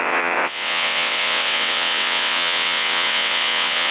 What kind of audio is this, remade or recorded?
remade